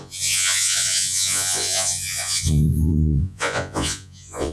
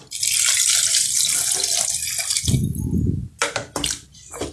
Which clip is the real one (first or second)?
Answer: second